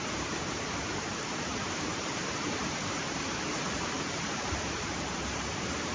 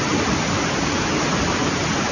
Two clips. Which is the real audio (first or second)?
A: second